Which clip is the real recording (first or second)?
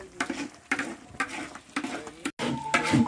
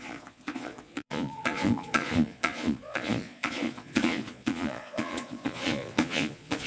first